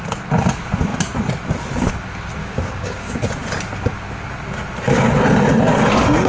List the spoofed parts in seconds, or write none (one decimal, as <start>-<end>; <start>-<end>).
2.4-3.2